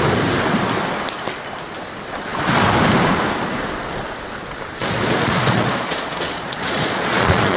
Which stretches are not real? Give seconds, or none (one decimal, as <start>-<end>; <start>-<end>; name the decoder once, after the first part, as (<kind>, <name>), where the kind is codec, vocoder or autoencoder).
4.8-7.6 (vocoder, Vocos)